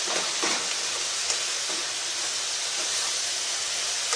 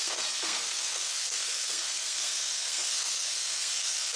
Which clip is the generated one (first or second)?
second